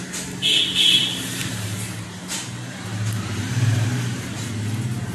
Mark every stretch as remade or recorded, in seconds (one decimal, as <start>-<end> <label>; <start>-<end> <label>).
0.0-1.4 recorded; 1.4-4.5 remade; 4.5-5.1 recorded